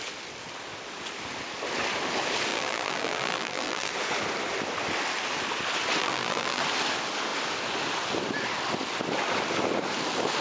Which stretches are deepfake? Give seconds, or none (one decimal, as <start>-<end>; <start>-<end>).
2.5-3.9; 6.0-6.6